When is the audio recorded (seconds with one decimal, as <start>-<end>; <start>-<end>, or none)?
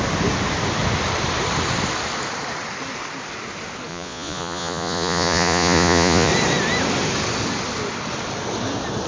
0.0-3.9; 6.3-9.1